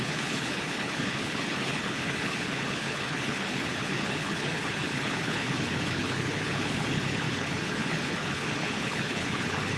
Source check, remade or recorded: remade